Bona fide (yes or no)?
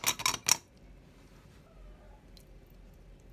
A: yes